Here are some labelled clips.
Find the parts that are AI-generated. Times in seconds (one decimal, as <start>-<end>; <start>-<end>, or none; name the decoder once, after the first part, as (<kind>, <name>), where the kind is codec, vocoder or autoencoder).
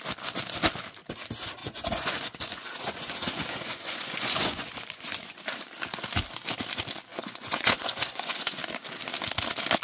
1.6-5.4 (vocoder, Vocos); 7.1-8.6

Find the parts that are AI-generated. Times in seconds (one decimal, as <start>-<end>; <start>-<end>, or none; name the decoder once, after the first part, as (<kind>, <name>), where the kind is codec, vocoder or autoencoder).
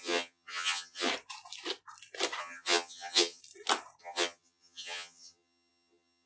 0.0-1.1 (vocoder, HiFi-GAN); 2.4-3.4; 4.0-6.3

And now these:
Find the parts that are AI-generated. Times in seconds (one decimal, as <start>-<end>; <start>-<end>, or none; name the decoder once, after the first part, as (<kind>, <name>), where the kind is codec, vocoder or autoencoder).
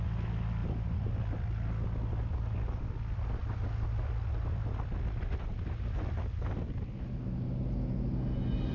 0.6-1.4 (vocoder, BigVGAN v2)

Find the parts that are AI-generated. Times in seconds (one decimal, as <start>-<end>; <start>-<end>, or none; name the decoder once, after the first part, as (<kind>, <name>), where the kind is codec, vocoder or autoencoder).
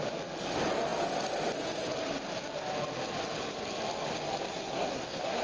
4.5-5.4 (codec, SNAC)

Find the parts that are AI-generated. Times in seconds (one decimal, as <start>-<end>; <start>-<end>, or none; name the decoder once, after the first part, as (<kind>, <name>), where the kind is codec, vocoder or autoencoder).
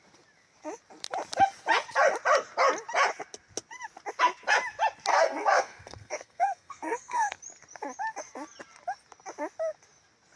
5.1-7.4 (codec, SNAC)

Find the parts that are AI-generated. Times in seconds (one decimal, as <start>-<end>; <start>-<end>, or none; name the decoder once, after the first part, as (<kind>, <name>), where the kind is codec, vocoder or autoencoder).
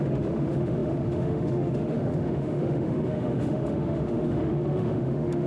0.0-5.5 (autoencoder, DAC-VAE)